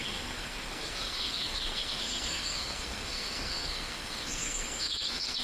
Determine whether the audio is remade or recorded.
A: remade